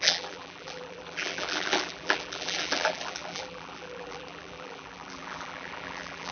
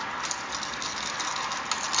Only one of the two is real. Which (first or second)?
second